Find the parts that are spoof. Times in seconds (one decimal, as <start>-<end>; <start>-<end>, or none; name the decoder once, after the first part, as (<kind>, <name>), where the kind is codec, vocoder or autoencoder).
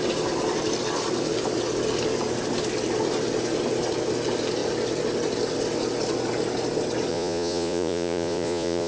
7.1-8.9 (vocoder, Vocos)